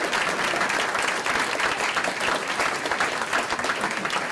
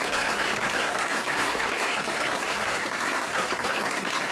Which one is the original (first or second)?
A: first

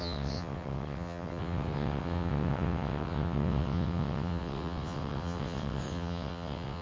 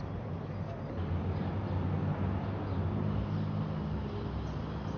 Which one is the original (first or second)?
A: second